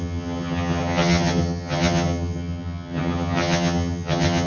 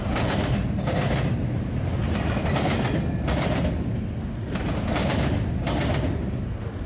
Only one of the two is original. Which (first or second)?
second